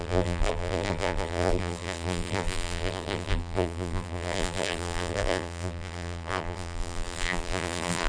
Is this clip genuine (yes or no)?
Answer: no